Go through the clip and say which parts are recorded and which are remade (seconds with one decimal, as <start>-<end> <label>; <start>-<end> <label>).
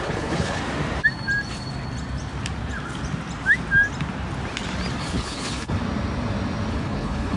0.0-0.6 remade; 0.6-5.0 recorded; 5.0-5.8 remade; 5.8-6.7 recorded; 6.7-7.4 remade